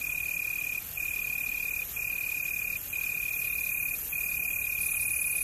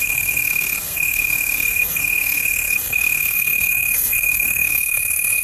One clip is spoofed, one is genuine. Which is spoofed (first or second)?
second